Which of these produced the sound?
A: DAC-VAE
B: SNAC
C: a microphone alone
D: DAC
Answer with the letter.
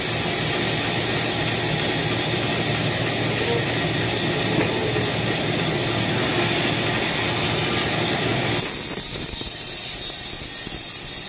C